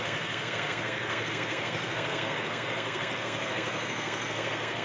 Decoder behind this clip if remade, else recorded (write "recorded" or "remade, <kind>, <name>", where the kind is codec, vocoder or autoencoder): remade, codec, SNAC